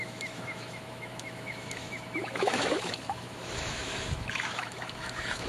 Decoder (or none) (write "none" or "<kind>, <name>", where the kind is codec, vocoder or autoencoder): autoencoder, DAC-VAE